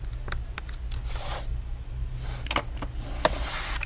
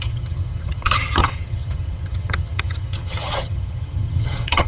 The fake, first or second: second